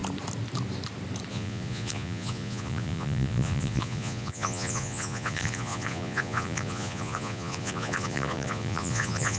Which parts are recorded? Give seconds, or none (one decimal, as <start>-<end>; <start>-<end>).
0.0-1.3